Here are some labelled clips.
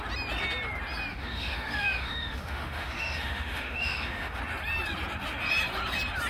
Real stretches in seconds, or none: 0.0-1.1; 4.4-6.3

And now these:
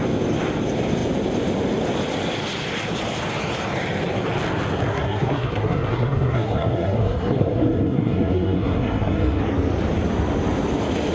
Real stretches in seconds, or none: 0.0-4.9; 9.4-11.1

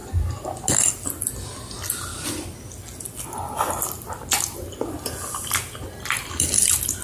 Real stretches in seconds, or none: 0.0-7.0